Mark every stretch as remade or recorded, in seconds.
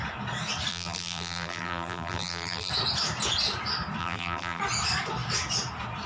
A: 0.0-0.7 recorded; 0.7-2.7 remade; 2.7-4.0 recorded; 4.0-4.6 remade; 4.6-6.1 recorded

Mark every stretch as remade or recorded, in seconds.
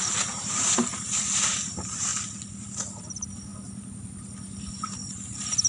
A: 0.0-2.1 remade; 2.1-2.6 recorded; 2.6-5.7 remade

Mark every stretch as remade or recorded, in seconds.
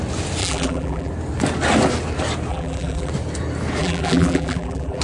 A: 0.0-0.4 recorded; 0.4-1.1 remade; 1.1-2.5 recorded; 2.5-3.1 remade; 3.1-3.8 recorded; 3.8-5.0 remade